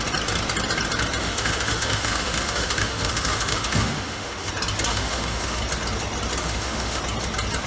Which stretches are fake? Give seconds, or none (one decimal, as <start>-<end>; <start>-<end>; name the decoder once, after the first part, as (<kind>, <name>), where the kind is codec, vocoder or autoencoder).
1.2-4.5 (autoencoder, DAC-VAE); 4.9-5.6; 6.4-7.0